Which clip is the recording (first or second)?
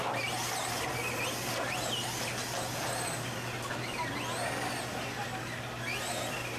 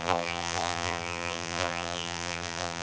first